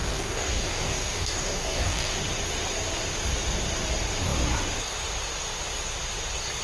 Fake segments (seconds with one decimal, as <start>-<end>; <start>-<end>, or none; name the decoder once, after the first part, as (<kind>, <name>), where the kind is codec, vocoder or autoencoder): 0.0-2.2 (codec, DAC)